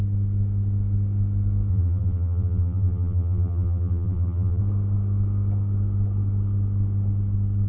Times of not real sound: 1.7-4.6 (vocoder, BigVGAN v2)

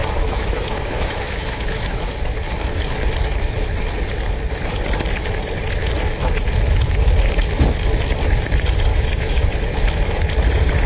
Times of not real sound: 0.0-2.0 (autoencoder, DAC-VAE); 8.9-9.4

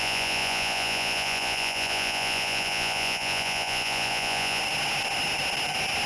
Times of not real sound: 0.0-4.6 (vocoder, Vocos)

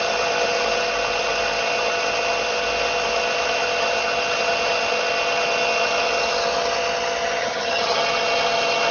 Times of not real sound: 7.4-8.0 (vocoder, HiFi-GAN)

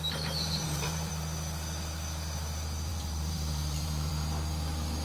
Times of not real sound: 0.4-1.1 (vocoder, BigVGAN v2); 2.9-4.1

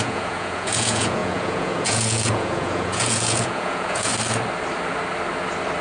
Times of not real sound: 0.0-4.1 (vocoder, Vocos)

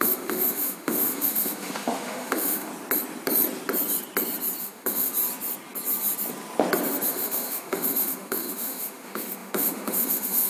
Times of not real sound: 0.0-2.7 (autoencoder, DAC-VAE); 4.6-5.1; 7.1-10.5